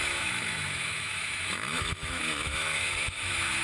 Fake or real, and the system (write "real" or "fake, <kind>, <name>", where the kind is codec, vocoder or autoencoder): fake, autoencoder, DAC-VAE